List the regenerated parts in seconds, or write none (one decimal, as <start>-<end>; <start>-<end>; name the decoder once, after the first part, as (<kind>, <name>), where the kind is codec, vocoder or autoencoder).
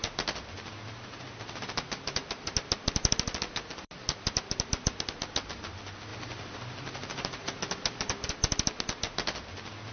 none